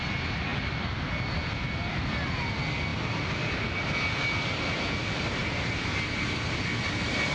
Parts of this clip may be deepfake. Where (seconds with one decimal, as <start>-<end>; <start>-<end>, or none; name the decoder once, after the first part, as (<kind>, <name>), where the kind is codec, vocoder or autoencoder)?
2.9-3.5 (vocoder, BigVGAN v2)